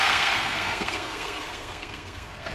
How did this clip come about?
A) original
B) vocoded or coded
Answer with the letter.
B